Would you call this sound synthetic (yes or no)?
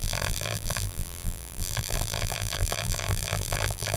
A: yes